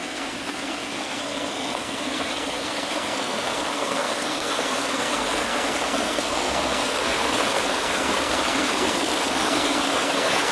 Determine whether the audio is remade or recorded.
remade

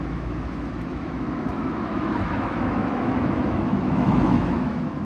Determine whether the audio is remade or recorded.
remade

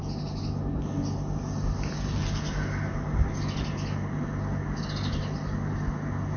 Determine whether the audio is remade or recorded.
recorded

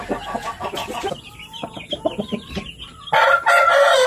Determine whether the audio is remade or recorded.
recorded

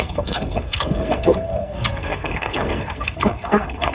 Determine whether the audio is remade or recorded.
remade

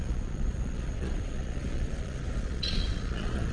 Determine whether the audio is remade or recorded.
remade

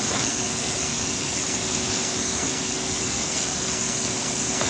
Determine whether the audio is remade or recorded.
remade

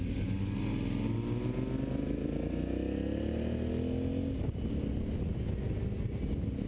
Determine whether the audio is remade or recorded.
recorded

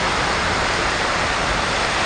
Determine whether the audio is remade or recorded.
recorded